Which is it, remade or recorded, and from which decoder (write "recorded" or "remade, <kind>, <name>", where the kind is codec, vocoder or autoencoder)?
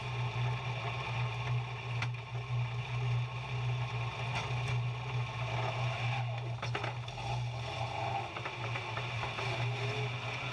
recorded